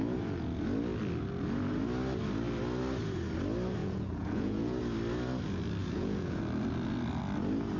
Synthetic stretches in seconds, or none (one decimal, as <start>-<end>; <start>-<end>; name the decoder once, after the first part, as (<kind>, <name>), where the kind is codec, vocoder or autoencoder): 3.8-4.8 (vocoder, Vocos); 5.8-6.4